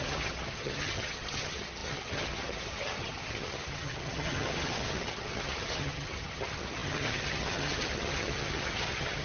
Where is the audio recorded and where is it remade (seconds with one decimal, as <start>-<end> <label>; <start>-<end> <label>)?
0.0-9.2 remade